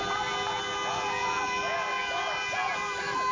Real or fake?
real